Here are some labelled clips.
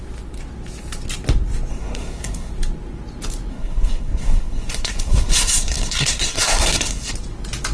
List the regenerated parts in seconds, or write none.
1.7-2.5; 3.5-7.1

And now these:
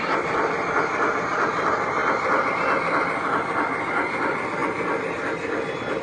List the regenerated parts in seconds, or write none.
none